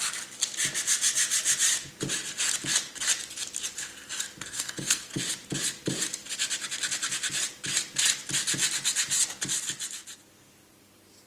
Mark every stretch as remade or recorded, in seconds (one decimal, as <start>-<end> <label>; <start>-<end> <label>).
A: 0.0-4.4 recorded; 4.4-5.2 remade; 5.2-11.3 recorded